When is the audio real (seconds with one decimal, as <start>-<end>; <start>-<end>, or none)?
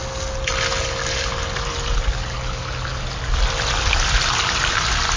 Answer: 0.0-5.2